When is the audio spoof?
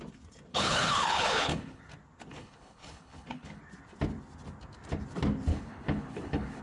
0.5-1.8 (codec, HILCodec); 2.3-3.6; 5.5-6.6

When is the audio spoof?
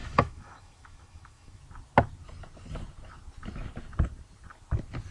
0.0-1.6 (autoencoder, DAC-VAE)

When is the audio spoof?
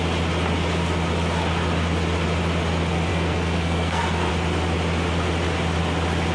3.1-4.3 (codec, SNAC)